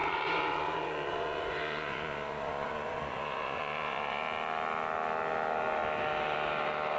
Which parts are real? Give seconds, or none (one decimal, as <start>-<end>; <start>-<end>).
4.2-7.0